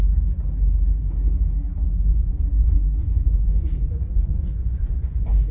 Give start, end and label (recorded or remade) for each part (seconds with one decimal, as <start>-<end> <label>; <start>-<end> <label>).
0.0-2.1 recorded; 2.1-5.5 remade

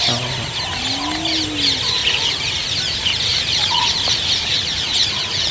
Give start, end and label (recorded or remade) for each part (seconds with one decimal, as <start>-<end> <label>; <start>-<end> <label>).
0.0-2.0 recorded; 2.0-2.8 remade; 2.8-3.3 recorded; 3.3-5.5 remade

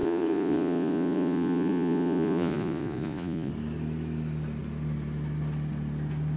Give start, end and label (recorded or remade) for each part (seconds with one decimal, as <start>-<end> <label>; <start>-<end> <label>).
0.0-3.5 remade; 3.5-6.4 recorded

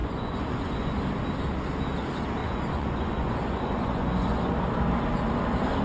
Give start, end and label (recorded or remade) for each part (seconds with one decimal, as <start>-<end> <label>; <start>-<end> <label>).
0.0-0.9 remade; 0.9-2.4 recorded; 2.4-4.5 remade; 4.5-5.8 recorded

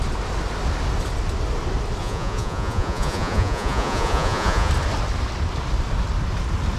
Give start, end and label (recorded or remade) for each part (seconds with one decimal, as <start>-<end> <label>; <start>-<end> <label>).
0.0-2.0 recorded; 2.0-4.7 remade; 4.7-6.8 recorded

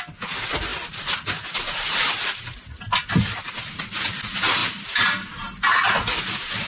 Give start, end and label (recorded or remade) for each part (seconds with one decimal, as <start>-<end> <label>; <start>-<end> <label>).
0.0-6.7 recorded

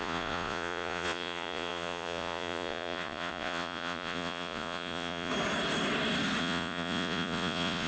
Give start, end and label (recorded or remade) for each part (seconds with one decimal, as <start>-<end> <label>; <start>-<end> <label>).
0.0-5.3 remade; 5.3-6.4 recorded; 6.4-7.9 remade

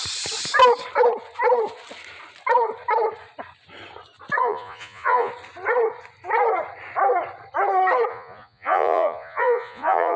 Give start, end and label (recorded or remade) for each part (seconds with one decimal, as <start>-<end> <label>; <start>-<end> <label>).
0.0-4.4 recorded; 4.4-5.3 remade; 5.3-8.1 recorded; 8.1-10.2 remade